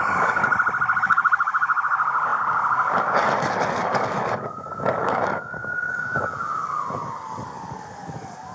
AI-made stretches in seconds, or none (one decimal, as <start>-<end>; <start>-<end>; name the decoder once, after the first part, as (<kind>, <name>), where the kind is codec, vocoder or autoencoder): 0.0-0.5 (codec, DAC); 1.0-8.5